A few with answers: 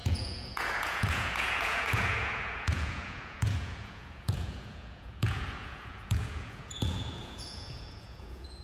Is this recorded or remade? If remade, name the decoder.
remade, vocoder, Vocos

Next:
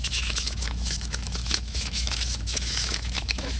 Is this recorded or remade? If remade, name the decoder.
remade, autoencoder, DAC-VAE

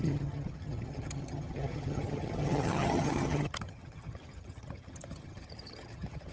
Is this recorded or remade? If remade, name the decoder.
remade, vocoder, HiFi-GAN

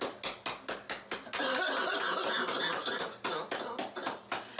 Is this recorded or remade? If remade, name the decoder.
recorded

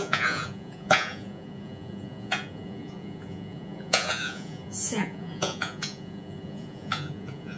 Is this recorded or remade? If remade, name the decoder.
remade, vocoder, Vocos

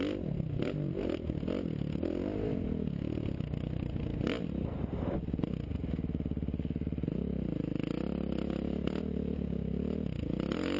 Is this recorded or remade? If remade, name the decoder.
recorded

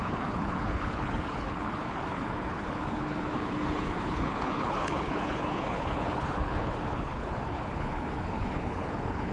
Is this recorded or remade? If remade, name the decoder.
remade, codec, HILCodec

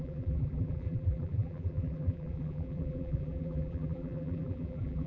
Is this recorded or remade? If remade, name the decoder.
remade, vocoder, BigVGAN v2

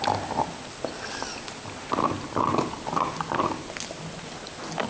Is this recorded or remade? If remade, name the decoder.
recorded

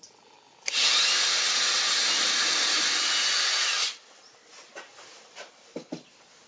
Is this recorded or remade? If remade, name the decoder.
recorded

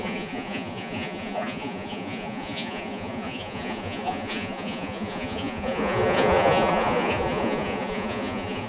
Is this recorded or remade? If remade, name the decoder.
remade, vocoder, Vocos